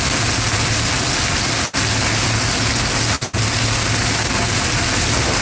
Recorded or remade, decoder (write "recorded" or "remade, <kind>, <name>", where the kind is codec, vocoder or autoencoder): recorded